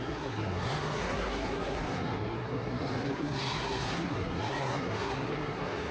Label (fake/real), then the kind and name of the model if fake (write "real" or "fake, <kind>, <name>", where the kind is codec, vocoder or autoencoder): fake, codec, SNAC